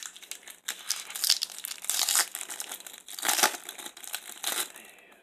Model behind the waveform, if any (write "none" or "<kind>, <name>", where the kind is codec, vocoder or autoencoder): none